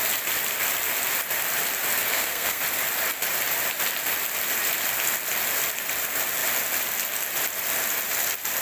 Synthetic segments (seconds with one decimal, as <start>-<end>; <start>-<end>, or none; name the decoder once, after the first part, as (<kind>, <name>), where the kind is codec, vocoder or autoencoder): 2.1-2.6 (codec, SNAC)